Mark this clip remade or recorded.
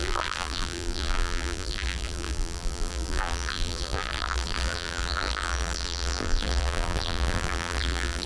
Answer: remade